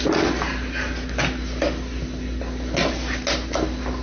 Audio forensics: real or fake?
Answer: real